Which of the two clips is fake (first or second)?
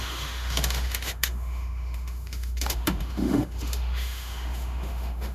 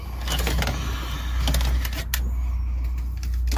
first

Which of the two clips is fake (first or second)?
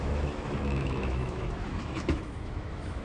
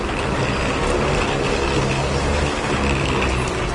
first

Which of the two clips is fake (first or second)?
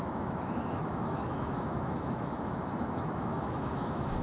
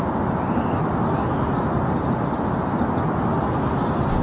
first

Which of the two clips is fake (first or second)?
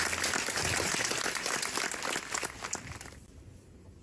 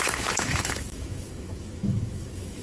second